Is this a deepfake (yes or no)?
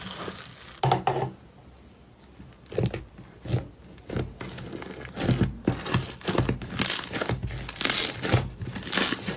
no